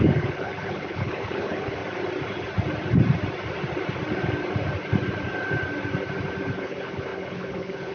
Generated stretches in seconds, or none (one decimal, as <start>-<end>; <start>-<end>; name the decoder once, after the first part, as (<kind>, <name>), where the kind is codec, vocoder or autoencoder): 0.0-1.8 (codec, HILCodec); 6.5-7.9